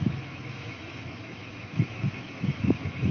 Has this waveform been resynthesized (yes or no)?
yes